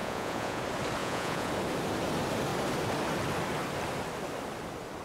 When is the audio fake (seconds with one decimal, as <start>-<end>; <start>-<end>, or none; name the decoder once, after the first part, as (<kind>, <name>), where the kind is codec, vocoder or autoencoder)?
0.0-0.6 (vocoder, Vocos); 1.0-1.5